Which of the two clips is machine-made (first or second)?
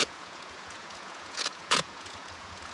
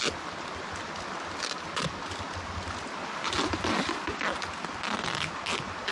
first